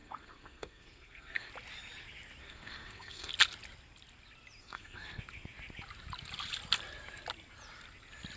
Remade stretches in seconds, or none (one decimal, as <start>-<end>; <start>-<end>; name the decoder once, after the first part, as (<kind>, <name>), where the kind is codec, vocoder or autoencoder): 0.0-1.5 (codec, SNAC); 2.4-3.3; 4.6-5.2